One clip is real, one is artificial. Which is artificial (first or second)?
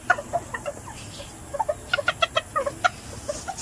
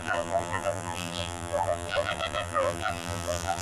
second